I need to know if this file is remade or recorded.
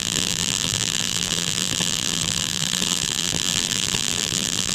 remade